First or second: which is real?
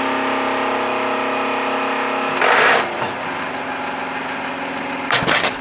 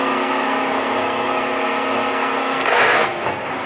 first